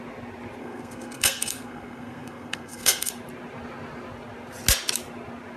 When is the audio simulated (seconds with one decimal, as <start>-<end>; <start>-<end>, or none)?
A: 0.6-3.1